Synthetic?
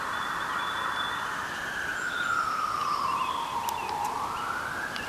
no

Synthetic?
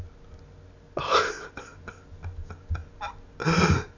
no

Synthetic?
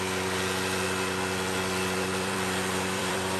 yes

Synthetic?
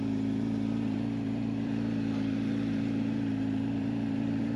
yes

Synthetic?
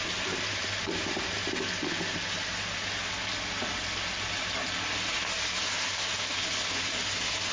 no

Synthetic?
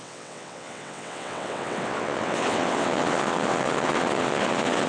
yes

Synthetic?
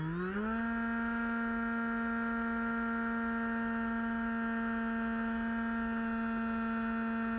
no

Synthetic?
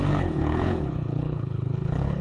yes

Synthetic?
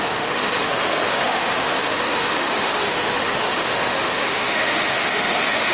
yes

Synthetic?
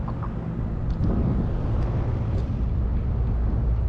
no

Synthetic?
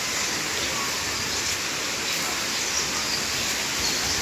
no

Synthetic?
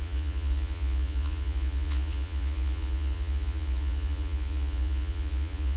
yes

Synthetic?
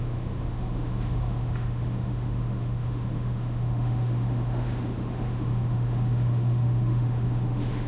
yes